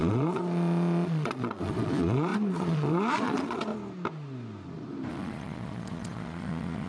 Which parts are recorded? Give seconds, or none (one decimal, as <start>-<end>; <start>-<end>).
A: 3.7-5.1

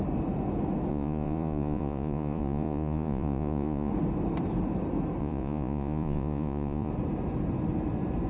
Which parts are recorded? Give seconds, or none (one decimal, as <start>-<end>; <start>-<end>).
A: 0.0-0.9; 3.9-5.2; 6.9-8.3

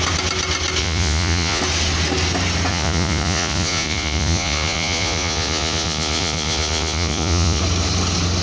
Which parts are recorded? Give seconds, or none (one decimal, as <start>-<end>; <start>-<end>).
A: 0.0-0.8; 1.6-2.7; 7.6-8.4